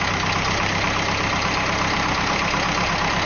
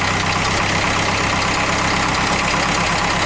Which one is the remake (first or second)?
first